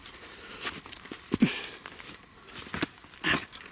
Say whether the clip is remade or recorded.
recorded